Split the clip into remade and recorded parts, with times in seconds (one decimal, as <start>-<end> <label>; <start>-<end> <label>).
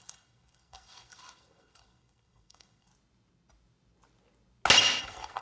0.0-2.9 remade; 2.9-5.0 recorded; 5.0-5.4 remade